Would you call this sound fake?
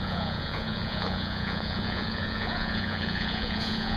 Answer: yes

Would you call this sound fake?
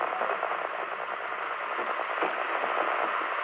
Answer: no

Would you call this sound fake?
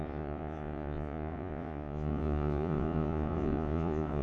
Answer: yes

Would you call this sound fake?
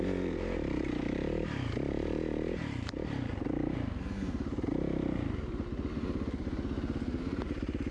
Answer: yes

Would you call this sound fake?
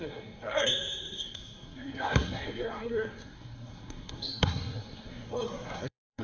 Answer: yes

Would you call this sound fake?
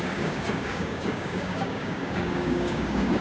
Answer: yes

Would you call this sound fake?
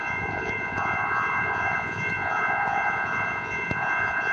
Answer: yes